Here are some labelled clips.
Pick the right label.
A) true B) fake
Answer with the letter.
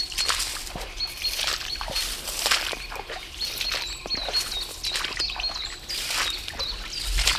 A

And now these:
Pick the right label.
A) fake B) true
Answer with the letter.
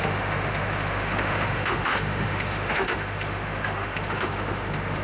A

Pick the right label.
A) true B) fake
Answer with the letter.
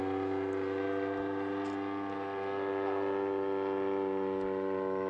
A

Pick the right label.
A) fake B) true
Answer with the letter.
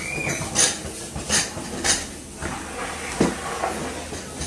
B